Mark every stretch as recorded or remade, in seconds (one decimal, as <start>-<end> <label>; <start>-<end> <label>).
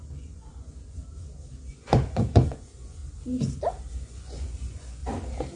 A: 0.0-1.0 remade; 1.0-1.7 recorded; 1.7-3.0 remade; 3.0-3.9 recorded; 3.9-5.0 remade; 5.0-5.6 recorded